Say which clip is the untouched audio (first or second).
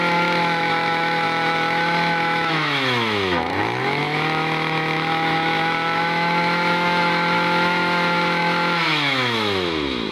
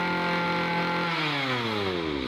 second